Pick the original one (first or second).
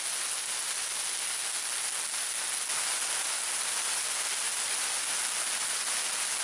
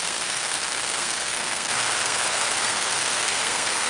first